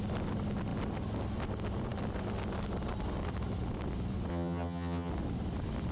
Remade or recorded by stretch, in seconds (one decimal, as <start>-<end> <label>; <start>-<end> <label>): 0.0-4.3 recorded; 4.3-5.1 remade; 5.1-5.9 recorded